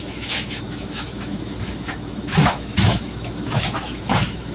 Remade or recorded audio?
remade